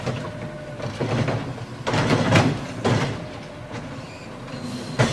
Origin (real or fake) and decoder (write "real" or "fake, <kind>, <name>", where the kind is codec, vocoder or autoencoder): real